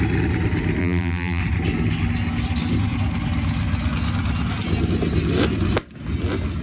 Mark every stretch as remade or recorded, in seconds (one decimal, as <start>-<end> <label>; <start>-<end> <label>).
0.0-0.8 recorded; 0.8-1.4 remade; 1.4-6.6 recorded